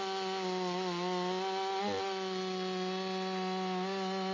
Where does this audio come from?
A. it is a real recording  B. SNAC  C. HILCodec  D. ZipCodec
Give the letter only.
A